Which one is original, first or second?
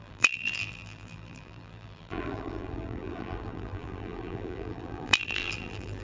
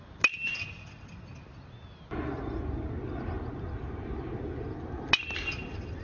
second